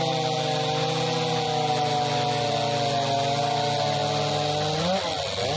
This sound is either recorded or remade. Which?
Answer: recorded